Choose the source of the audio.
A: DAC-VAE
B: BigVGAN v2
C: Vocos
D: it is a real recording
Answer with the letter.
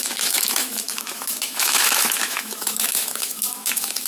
A